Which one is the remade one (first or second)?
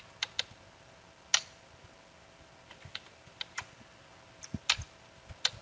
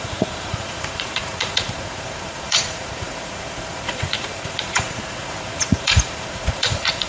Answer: second